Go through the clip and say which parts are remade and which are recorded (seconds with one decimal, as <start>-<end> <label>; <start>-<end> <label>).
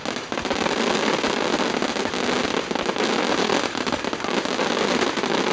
0.0-3.4 recorded; 3.4-4.0 remade; 4.0-5.5 recorded